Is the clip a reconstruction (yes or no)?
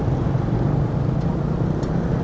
no